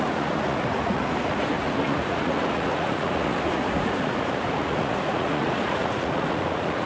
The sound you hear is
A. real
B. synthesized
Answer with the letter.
B